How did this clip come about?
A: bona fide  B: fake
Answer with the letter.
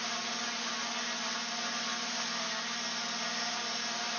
A